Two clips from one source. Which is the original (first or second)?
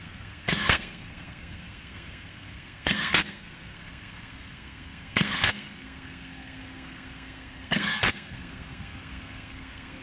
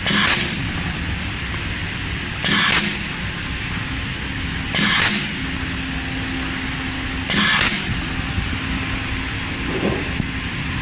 second